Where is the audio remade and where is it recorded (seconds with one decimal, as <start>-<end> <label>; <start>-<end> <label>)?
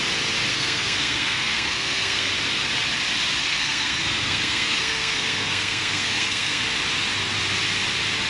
0.0-0.5 recorded; 0.5-2.3 remade; 2.3-3.4 recorded; 3.4-6.6 remade; 6.6-8.3 recorded